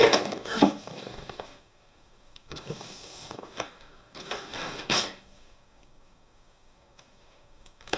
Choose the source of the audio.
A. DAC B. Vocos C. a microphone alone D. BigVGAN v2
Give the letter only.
A